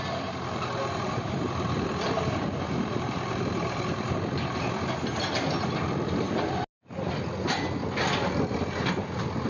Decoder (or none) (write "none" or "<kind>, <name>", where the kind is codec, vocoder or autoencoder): none